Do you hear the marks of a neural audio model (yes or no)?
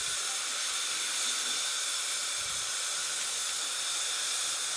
no